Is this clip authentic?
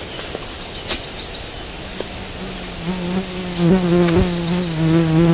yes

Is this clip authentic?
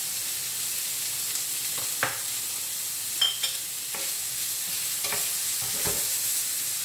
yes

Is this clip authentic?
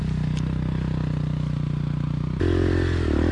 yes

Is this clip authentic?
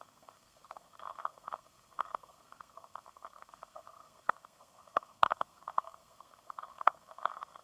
no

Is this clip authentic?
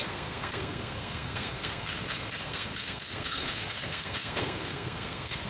no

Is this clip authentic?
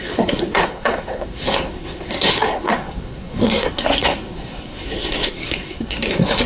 no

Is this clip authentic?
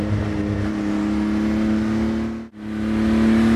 yes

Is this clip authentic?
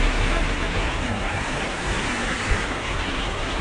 no